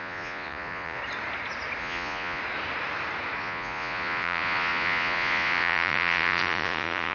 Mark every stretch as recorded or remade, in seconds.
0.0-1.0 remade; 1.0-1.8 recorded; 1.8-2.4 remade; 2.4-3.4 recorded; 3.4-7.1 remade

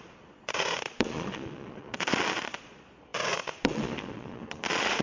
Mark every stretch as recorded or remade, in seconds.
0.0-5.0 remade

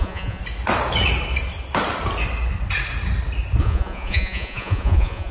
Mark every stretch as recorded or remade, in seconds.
0.0-0.4 remade; 0.4-3.6 recorded; 3.6-5.3 remade

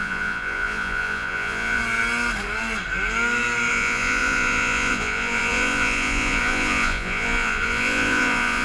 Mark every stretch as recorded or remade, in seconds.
0.0-1.8 remade; 1.8-3.7 recorded; 3.7-8.6 remade

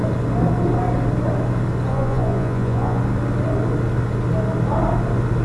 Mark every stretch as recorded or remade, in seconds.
0.0-1.9 recorded; 1.9-3.0 remade; 3.0-5.4 recorded

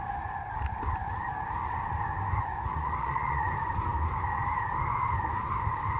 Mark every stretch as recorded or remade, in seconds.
0.0-2.7 recorded; 2.7-3.5 remade; 3.5-6.0 recorded

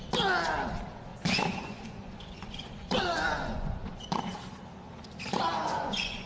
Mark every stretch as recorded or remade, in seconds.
0.0-1.1 recorded; 1.1-4.2 remade; 4.2-5.6 recorded; 5.6-6.3 remade

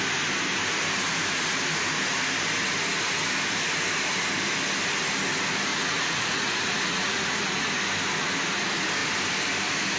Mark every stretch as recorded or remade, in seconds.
0.0-5.7 recorded; 5.7-7.7 remade; 7.7-10.0 recorded